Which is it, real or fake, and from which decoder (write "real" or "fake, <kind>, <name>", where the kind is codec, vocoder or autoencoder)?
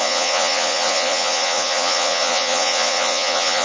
fake, vocoder, Vocos